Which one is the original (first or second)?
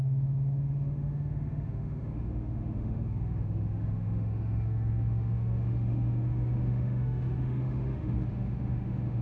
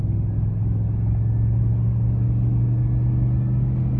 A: second